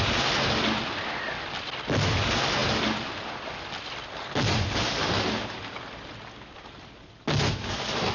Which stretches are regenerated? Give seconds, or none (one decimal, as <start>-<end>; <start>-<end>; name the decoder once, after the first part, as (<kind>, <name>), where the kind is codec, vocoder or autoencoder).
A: none